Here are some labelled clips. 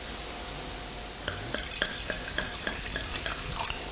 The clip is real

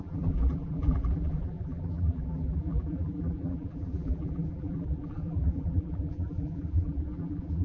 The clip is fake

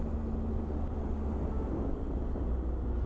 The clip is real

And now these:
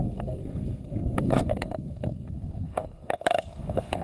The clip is fake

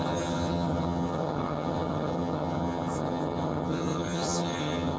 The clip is fake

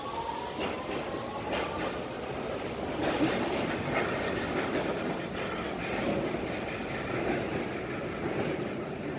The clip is real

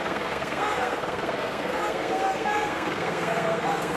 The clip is fake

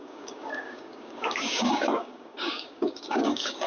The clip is fake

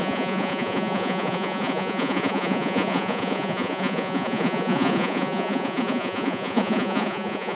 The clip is fake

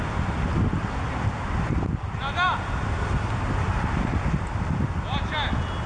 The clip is real